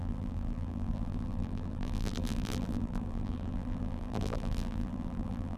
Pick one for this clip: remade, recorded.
remade